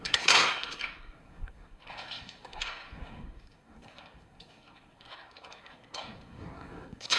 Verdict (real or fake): fake